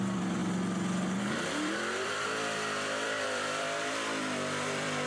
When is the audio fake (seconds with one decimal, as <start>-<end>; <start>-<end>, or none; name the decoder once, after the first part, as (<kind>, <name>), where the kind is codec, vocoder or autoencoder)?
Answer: 0.0-0.4 (vocoder, BigVGAN v2); 1.2-5.1